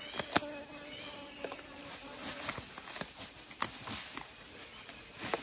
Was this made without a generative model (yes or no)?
yes